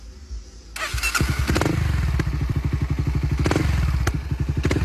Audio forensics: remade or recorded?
recorded